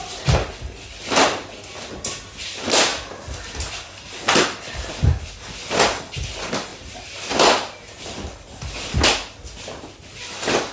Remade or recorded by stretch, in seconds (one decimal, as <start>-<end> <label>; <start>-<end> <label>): 0.0-10.7 recorded